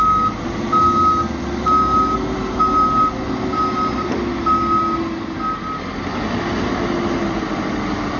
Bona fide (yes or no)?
yes